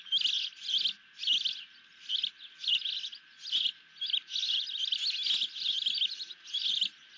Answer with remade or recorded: recorded